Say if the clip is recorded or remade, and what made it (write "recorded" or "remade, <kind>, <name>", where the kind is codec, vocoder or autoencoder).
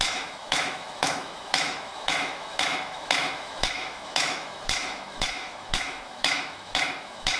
remade, autoencoder, DAC-VAE